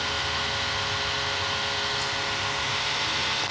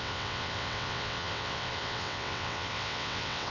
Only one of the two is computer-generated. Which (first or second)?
second